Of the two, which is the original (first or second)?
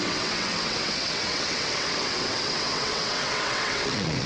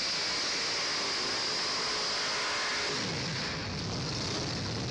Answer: second